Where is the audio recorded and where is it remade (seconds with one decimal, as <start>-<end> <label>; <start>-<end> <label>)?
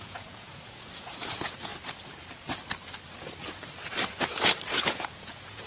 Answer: 0.0-1.7 remade; 1.7-4.7 recorded; 4.7-5.7 remade